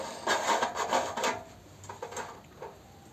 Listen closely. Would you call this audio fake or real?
real